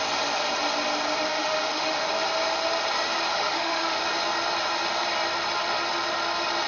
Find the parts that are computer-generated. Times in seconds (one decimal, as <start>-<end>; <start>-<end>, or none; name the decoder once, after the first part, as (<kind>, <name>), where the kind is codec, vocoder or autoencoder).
1.3-2.1 (autoencoder, DAC-VAE); 3.3-4.0